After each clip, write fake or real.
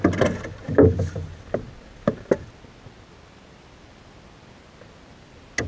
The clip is real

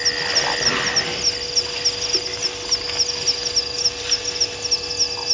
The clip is real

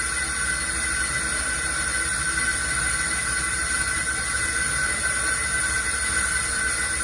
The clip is real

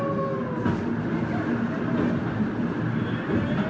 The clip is real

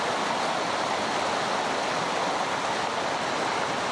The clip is real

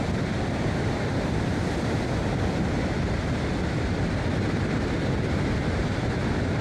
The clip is fake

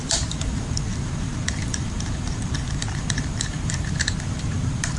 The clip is fake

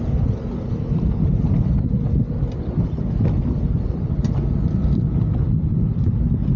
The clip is real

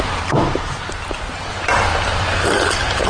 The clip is fake